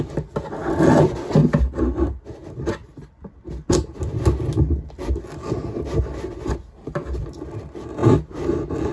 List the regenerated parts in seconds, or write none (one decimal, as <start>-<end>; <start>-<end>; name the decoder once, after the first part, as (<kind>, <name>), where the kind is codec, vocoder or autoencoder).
none